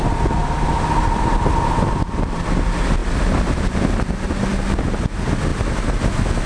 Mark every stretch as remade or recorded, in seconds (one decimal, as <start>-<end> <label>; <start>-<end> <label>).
0.0-6.5 recorded